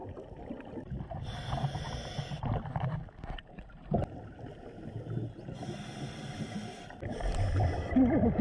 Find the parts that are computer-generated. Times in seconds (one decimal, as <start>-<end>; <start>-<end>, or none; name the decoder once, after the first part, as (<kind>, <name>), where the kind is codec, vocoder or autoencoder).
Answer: none